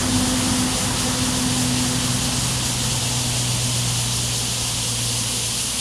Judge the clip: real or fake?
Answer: real